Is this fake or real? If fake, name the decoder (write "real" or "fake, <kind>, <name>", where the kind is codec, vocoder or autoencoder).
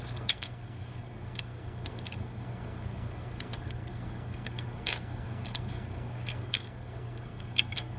fake, codec, SNAC